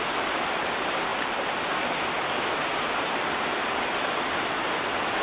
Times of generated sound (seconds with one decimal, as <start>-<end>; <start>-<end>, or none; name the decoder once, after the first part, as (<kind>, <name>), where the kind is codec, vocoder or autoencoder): none

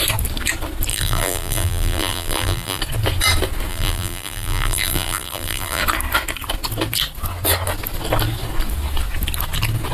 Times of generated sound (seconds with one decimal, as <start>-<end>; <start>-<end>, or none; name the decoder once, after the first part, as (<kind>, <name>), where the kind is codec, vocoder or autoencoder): 0.9-2.8 (vocoder, BigVGAN v2); 3.7-5.8